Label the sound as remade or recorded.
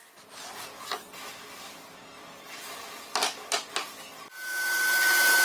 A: recorded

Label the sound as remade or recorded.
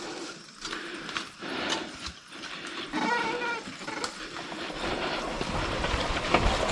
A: recorded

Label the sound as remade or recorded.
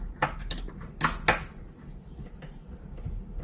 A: recorded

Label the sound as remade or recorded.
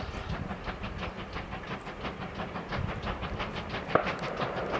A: recorded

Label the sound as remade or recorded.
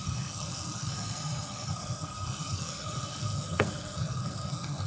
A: remade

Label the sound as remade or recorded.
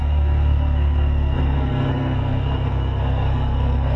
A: remade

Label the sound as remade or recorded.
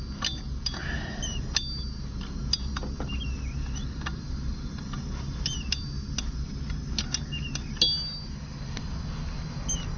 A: recorded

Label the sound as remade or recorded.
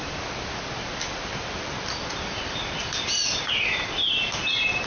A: recorded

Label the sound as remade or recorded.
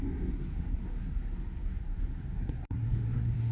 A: remade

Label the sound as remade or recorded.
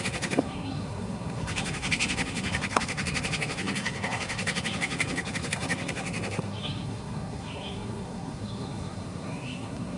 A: remade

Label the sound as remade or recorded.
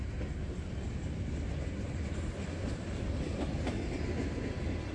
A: recorded